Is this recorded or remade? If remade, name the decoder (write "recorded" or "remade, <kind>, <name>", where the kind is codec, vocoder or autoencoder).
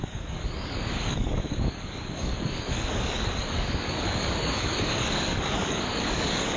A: remade, codec, DAC